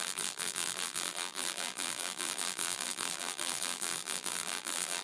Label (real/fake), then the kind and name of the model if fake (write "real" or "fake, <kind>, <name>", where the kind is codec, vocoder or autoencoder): fake, vocoder, BigVGAN v2